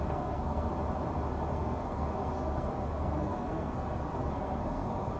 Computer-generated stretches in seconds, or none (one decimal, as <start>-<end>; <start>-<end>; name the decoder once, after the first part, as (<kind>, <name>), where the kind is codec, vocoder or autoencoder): 0.0-0.7 (codec, SNAC); 1.5-5.2